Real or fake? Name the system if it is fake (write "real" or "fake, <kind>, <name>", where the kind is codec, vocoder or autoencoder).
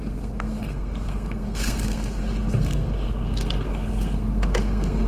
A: fake, codec, SNAC